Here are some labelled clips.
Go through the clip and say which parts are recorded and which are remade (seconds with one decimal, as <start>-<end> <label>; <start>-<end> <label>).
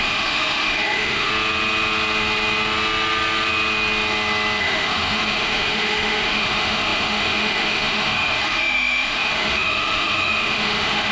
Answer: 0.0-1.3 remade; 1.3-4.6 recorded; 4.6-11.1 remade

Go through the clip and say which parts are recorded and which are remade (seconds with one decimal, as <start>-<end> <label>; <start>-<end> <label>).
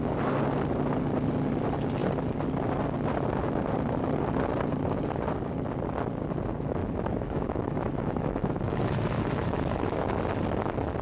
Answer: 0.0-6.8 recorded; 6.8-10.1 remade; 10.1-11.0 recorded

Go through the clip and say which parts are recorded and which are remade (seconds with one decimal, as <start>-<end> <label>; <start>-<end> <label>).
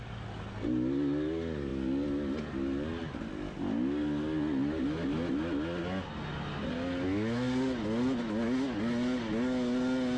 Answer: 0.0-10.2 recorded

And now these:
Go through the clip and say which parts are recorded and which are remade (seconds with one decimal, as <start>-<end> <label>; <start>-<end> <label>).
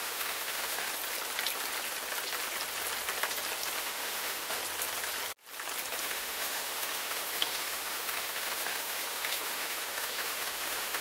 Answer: 0.0-0.9 remade; 0.9-3.8 recorded; 3.8-4.6 remade; 4.6-6.0 recorded; 6.0-11.0 remade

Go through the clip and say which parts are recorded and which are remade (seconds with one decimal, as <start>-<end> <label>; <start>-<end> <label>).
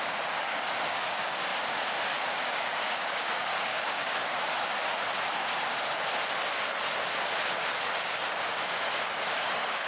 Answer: 0.0-1.5 remade; 1.5-2.3 recorded; 2.3-4.2 remade; 4.2-7.9 recorded; 7.9-9.9 remade